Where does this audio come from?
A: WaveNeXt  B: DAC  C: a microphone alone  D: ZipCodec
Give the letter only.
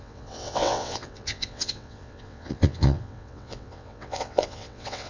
A